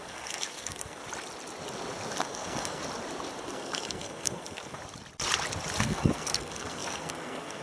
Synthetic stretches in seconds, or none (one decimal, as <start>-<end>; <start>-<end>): 0.0-1.0; 2.2-2.8; 3.4-4.8; 5.8-7.6